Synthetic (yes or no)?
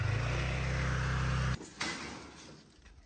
no